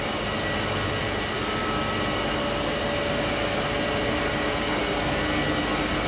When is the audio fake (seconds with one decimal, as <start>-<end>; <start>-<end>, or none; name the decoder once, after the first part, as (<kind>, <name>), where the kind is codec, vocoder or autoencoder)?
none